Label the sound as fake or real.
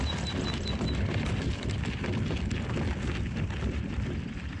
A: real